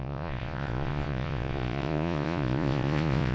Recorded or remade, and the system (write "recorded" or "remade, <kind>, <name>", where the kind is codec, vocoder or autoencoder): remade, vocoder, Vocos